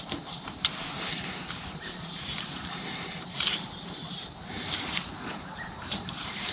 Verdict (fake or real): fake